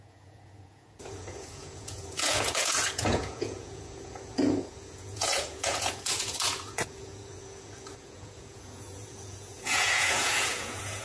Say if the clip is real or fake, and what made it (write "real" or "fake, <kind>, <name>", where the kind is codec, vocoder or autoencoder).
fake, vocoder, Vocos